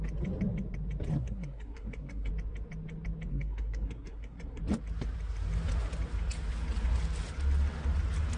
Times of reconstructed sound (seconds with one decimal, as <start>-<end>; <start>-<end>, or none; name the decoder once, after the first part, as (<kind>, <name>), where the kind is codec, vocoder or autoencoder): 1.1-2.3 (codec, SNAC); 3.3-4.6